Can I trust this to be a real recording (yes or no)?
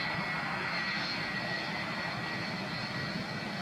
yes